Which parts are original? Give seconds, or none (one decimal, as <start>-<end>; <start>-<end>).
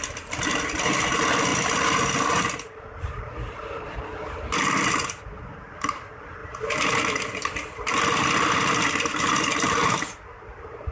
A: 0.0-1.5; 4.6-6.4; 9.3-10.9